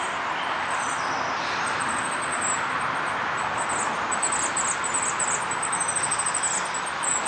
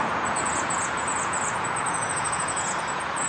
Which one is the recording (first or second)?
first